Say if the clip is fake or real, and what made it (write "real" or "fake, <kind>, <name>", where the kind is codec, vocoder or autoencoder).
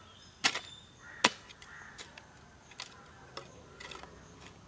real